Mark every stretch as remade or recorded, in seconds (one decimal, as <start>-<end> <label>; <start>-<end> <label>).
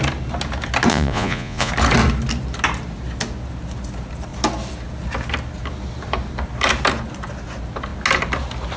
0.0-0.9 recorded; 0.9-1.7 remade; 1.7-8.8 recorded